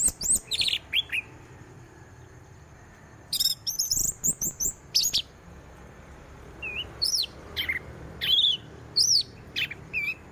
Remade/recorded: remade